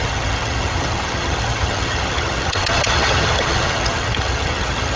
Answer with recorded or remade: remade